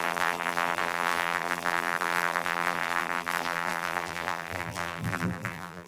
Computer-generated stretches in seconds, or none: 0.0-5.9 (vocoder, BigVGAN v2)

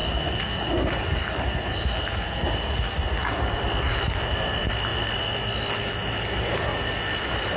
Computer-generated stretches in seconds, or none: 4.9-5.4 (vocoder, BigVGAN v2); 6.7-7.6

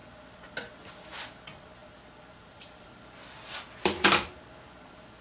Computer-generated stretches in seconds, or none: 1.8-4.3 (vocoder, BigVGAN v2)